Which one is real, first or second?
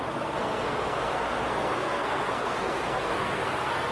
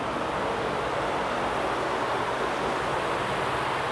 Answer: second